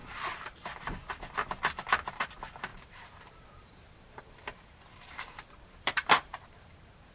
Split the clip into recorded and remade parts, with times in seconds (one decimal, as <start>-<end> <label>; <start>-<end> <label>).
0.0-1.1 remade; 1.1-2.7 recorded; 2.7-7.1 remade